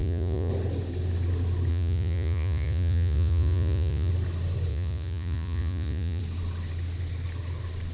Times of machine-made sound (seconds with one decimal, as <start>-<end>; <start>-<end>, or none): 0.0-0.5; 1.7-4.1; 4.7-6.2